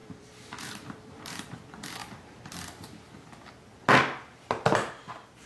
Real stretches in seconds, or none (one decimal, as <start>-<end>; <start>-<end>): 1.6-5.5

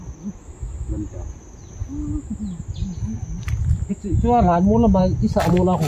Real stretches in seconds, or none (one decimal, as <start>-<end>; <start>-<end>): 0.0-5.9

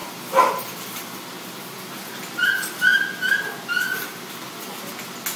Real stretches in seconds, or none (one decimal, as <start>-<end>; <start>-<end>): 1.4-5.4

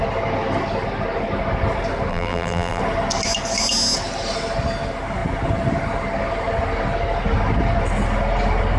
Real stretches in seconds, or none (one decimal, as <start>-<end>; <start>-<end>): 0.0-2.1; 2.8-8.8

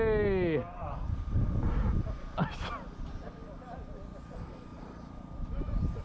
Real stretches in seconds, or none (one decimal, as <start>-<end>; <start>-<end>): 0.0-0.6; 1.8-4.7

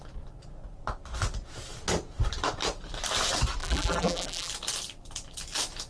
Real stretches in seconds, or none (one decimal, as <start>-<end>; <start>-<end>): 0.0-3.6; 4.5-5.9